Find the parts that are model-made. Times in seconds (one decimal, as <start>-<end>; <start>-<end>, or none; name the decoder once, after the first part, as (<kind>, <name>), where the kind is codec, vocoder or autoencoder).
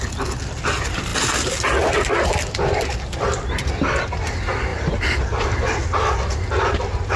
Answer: none